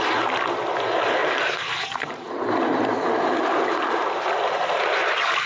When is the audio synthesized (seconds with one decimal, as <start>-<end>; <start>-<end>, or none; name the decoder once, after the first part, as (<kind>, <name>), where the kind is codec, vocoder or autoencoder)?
1.2-4.3 (vocoder, BigVGAN v2); 5.0-5.5